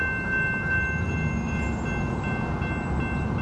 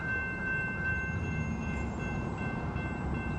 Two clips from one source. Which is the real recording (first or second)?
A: first